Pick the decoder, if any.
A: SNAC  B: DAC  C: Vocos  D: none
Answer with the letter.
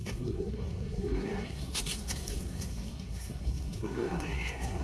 A